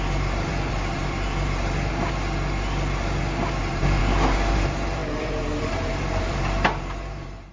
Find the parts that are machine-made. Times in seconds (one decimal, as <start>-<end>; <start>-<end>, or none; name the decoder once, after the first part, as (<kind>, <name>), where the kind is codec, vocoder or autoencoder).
0.0-1.9 (vocoder, BigVGAN v2); 3.6-4.0; 4.5-7.5